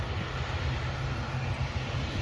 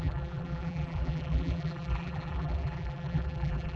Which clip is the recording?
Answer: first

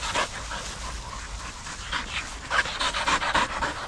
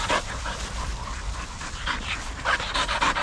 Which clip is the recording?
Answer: first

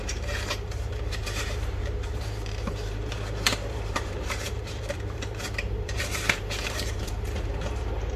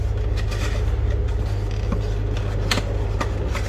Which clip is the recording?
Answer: second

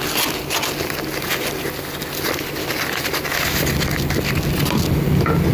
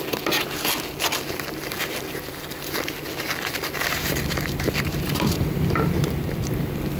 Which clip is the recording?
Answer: first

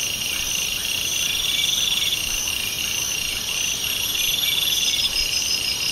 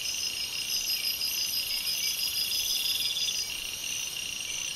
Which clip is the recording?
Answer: second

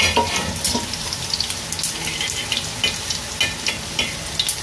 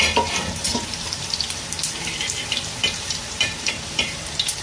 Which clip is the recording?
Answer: first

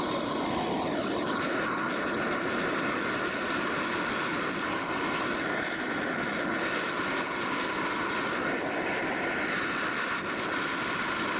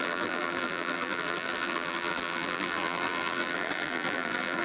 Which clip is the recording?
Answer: first